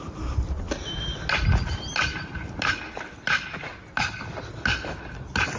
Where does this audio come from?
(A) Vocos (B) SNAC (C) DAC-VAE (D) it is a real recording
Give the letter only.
D